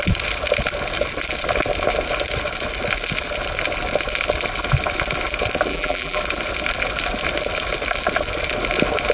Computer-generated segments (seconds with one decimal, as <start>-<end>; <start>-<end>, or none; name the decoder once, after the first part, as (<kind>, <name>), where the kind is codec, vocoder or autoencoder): 5.7-6.2 (vocoder, BigVGAN v2)